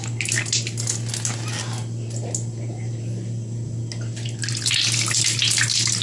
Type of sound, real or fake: real